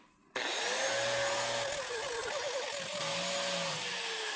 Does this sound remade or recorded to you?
recorded